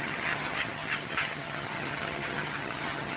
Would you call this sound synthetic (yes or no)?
yes